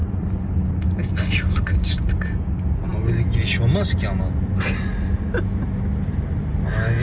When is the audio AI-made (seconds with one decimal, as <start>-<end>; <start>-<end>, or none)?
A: none